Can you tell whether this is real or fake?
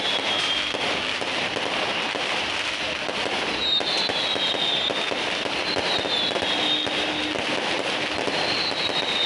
real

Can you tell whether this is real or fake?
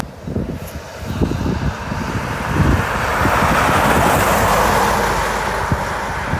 real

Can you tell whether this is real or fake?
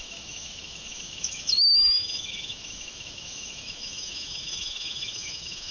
fake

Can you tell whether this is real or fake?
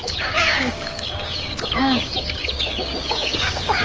fake